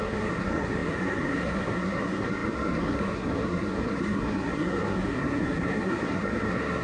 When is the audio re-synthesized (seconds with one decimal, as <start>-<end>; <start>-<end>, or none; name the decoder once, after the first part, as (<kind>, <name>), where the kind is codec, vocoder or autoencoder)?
0.0-6.8 (codec, SNAC)